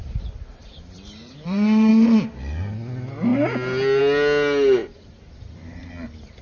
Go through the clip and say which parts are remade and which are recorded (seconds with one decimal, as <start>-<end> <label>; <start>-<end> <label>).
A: 0.0-0.6 recorded; 0.6-1.9 remade; 1.9-4.8 recorded; 4.8-5.9 remade; 5.9-6.4 recorded